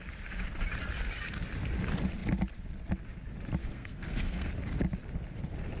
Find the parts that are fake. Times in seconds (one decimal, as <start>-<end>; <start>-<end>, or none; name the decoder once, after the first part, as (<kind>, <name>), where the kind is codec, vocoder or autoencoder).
3.6-4.5 (codec, SNAC)